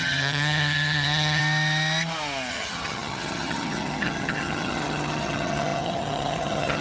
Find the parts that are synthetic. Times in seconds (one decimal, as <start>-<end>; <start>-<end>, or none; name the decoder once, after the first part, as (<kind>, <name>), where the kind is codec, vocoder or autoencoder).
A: 0.0-1.4 (vocoder, HiFi-GAN); 2.5-6.8